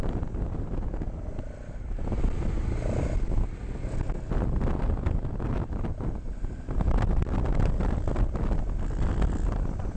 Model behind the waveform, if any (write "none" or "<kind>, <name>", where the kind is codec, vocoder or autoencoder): none